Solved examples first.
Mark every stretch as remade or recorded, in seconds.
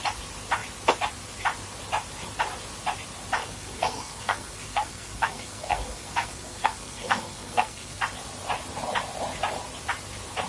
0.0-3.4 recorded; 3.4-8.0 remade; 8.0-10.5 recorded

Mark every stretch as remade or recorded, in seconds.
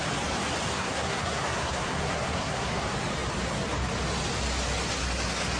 0.0-0.7 recorded; 0.7-2.8 remade; 2.8-5.6 recorded